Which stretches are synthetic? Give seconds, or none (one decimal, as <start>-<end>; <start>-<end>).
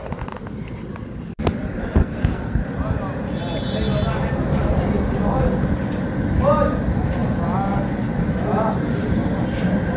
2.0-2.6